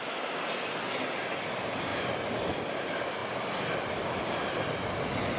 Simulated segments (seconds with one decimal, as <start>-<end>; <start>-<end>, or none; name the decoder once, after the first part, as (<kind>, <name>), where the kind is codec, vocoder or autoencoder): none